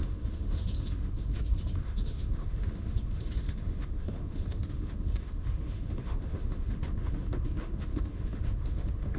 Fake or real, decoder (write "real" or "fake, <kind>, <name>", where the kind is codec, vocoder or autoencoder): fake, autoencoder, DAC-VAE